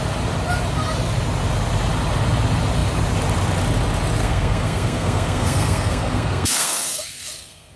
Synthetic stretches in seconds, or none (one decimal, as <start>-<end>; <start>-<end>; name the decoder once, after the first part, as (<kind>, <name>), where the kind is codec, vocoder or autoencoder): 4.2-7.8 (codec, SNAC)